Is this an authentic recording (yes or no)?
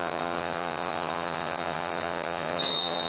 no